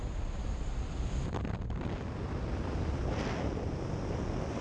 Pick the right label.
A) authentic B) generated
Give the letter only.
A